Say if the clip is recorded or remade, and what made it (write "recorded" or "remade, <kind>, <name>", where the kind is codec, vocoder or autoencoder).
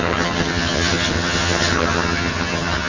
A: remade, vocoder, HiFi-GAN